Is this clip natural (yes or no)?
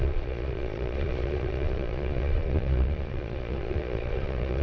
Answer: no